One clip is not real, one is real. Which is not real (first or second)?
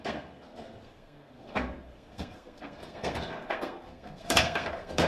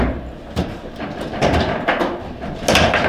first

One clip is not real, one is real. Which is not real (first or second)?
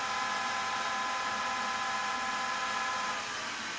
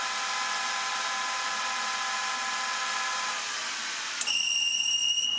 second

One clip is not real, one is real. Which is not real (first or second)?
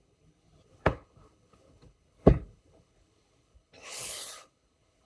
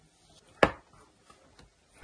first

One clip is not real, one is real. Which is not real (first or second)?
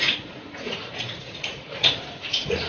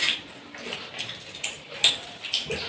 first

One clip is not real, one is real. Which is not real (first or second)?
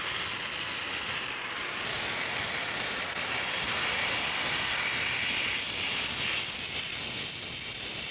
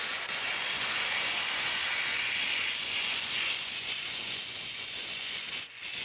second